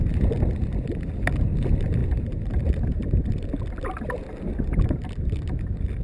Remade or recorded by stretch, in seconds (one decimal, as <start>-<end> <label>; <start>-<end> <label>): 0.0-2.0 recorded; 2.0-3.3 remade; 3.3-6.0 recorded